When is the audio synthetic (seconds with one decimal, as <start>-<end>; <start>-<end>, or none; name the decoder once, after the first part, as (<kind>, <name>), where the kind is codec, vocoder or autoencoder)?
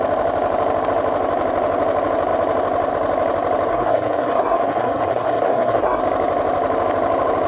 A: 3.7-6.0 (codec, SNAC)